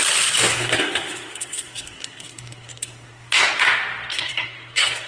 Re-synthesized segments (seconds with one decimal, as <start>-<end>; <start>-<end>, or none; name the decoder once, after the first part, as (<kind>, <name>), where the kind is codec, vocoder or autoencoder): 0.5-3.6 (codec, SNAC); 4.1-5.1